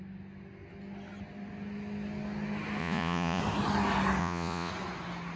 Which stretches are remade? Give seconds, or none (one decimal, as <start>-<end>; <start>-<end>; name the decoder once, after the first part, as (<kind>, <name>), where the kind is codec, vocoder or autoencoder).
2.8-3.4 (vocoder, Vocos); 4.2-4.7